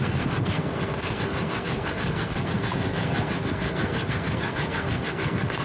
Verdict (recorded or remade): remade